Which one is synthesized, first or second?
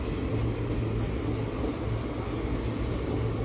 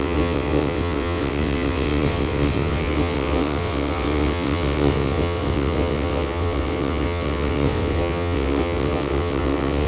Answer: second